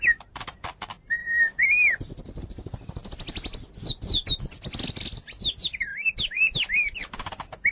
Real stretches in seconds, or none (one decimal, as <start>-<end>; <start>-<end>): 0.0-1.2; 2.2-3.0; 4.6-5.9; 7.3-7.7